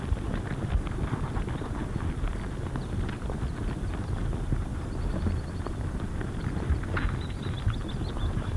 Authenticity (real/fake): real